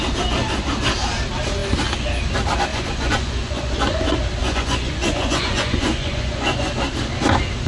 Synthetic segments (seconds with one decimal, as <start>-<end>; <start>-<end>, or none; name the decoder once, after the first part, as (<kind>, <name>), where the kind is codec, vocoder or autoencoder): 2.7-4.0 (vocoder, Vocos); 4.4-6.7